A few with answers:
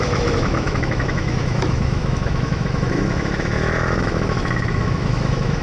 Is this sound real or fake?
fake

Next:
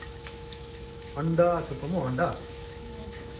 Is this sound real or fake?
fake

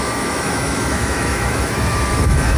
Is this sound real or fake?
fake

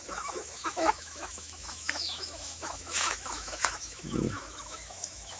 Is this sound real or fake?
fake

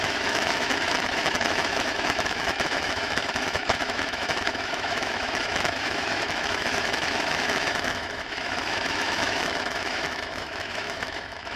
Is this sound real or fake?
fake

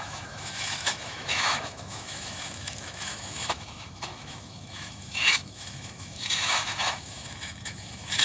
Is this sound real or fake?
fake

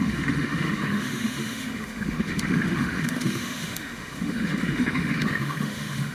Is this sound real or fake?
fake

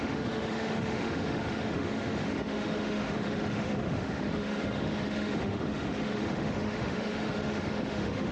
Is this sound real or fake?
fake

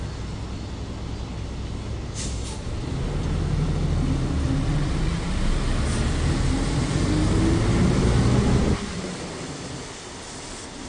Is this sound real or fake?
real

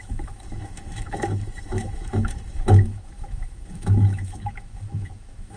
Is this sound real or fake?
fake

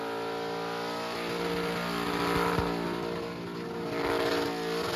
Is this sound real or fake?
real